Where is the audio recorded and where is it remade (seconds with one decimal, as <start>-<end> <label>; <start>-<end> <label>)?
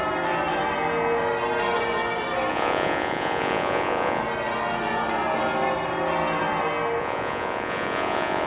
0.0-2.5 recorded; 2.5-4.2 remade; 4.2-7.0 recorded; 7.0-8.5 remade